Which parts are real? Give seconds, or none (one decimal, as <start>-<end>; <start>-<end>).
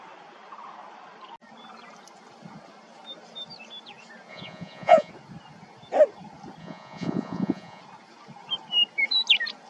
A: 0.0-4.3; 5.1-6.6; 7.8-9.7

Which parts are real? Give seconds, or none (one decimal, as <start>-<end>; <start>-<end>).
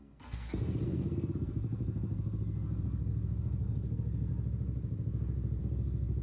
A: 4.3-5.6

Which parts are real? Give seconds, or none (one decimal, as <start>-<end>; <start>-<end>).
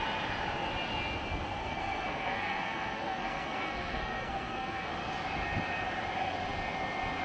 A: 0.0-1.6; 4.9-7.2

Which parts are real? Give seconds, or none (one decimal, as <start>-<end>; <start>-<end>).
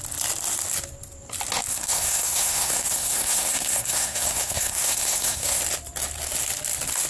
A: 0.0-1.7; 5.6-7.1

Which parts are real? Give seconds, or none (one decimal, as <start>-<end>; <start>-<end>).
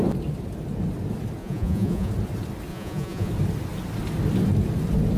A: 0.0-1.4; 2.1-2.7; 3.3-5.2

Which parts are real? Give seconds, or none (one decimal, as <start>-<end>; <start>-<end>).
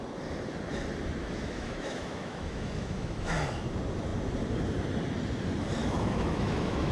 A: 0.0-1.2; 3.6-5.8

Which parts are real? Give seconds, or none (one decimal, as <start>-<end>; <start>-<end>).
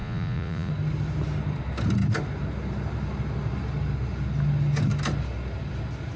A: 0.7-6.2